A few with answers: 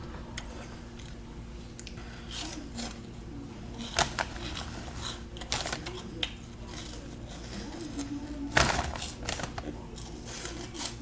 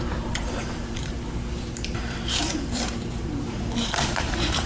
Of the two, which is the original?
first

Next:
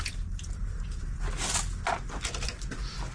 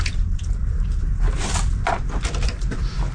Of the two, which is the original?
first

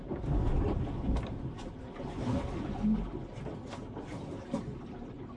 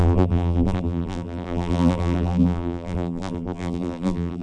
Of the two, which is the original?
first